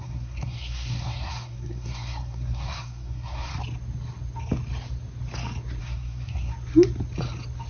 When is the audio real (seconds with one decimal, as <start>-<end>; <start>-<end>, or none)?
3.5-5.8; 6.5-7.7